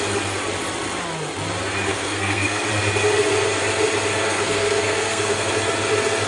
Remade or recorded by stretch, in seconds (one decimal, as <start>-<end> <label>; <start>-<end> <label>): 0.0-1.9 recorded; 1.9-2.7 remade; 2.7-4.1 recorded; 4.1-5.5 remade; 5.5-6.3 recorded